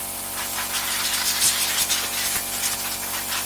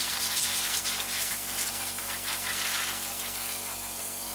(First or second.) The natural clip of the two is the first